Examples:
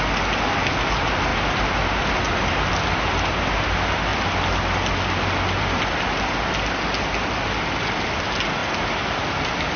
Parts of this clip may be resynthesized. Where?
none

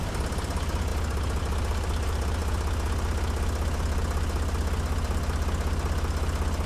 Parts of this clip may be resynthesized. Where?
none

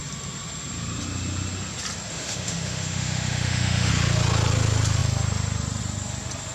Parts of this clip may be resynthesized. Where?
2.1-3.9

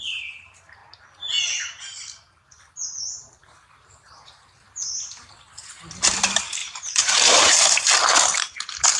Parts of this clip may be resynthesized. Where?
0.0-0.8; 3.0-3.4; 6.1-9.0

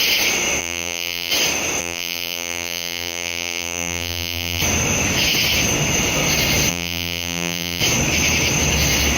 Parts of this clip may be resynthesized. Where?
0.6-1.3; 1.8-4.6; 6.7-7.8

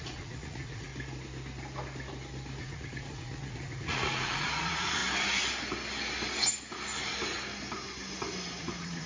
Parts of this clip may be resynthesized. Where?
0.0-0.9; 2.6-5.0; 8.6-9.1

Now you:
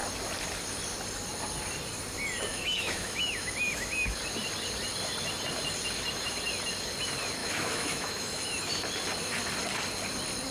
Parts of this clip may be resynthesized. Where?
2.5-4.2; 7.4-8.6